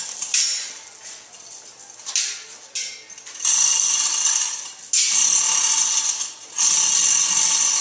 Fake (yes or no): no